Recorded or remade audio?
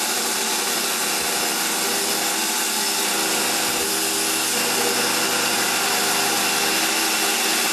recorded